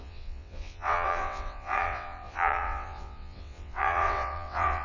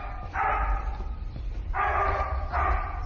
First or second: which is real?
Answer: second